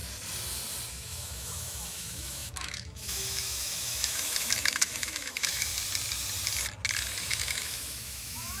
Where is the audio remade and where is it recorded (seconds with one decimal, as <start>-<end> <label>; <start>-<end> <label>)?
0.0-0.9 recorded; 0.9-5.7 remade; 5.7-7.2 recorded; 7.2-8.6 remade